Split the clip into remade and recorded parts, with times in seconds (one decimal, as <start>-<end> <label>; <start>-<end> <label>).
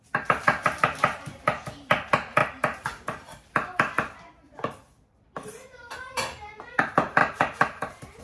0.0-2.4 recorded; 2.4-3.5 remade; 3.5-7.2 recorded; 7.2-8.2 remade